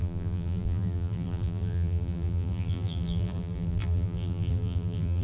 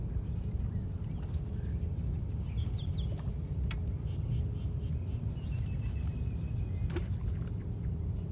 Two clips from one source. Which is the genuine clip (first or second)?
second